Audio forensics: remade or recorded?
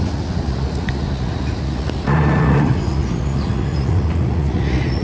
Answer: remade